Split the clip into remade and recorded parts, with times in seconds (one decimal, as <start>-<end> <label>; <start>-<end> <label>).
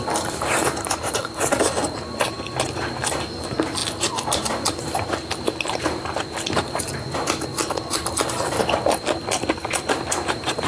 0.0-7.5 remade; 7.5-10.1 recorded; 10.1-10.7 remade